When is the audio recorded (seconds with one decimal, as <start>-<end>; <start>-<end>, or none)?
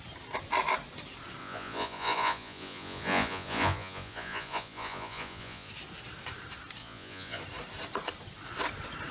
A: 0.0-1.4; 5.7-6.8; 7.4-9.1